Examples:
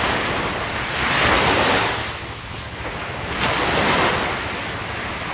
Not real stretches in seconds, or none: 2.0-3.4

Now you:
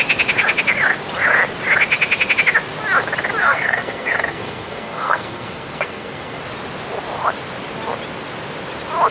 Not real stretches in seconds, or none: 3.4-6.4

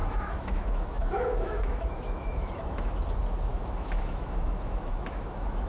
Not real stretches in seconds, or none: 0.0-3.0; 3.5-5.7